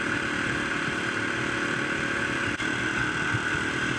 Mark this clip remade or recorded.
remade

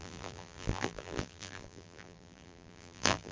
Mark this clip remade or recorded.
remade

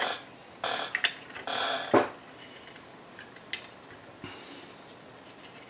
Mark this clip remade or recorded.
recorded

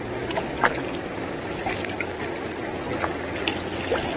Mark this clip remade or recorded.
recorded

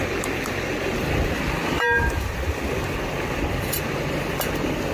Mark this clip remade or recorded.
recorded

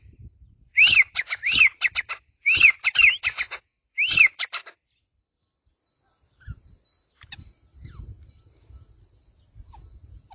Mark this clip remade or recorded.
remade